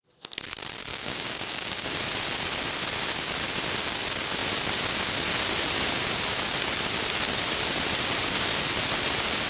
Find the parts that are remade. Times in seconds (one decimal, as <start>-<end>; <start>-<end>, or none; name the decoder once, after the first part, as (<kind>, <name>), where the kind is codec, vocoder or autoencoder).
0.9-2.0 (codec, DAC)